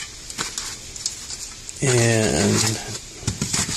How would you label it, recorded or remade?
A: recorded